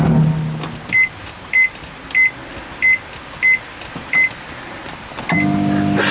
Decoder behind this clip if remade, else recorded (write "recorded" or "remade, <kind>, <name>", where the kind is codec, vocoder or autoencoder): recorded